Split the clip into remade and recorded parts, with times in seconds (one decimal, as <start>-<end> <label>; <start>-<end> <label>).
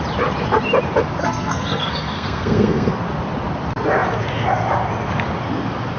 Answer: 0.0-1.2 recorded; 1.2-2.9 remade; 2.9-6.0 recorded